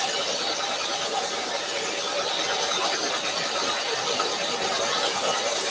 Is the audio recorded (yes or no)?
no